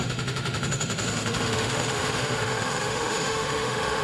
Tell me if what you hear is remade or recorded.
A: remade